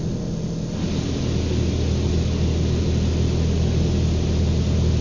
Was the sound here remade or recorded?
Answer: recorded